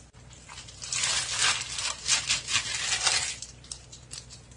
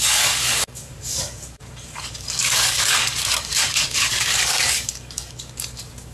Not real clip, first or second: second